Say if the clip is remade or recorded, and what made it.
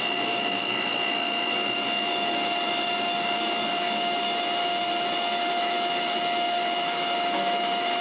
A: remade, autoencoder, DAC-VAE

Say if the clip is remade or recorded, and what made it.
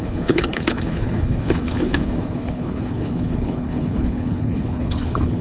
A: remade, codec, HILCodec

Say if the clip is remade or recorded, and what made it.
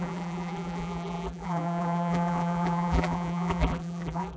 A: remade, vocoder, BigVGAN v2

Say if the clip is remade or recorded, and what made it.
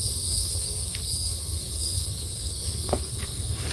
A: remade, codec, SNAC